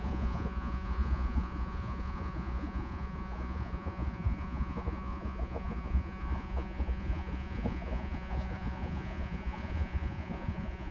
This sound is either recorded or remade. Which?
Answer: remade